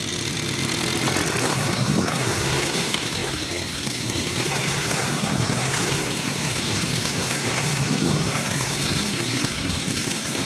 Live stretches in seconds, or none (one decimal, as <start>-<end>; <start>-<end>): 0.0-1.4